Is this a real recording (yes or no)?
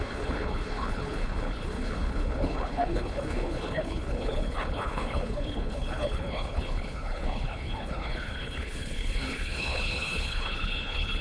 no